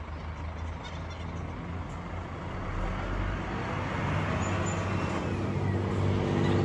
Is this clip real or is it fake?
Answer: real